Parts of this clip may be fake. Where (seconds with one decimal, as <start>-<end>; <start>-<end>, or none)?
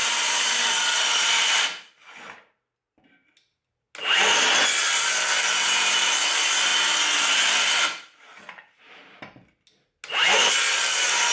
0.0-0.7